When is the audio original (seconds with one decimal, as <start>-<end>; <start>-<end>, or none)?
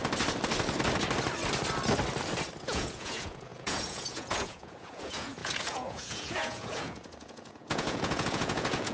0.0-2.6